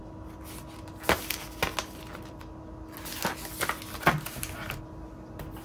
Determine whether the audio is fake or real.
real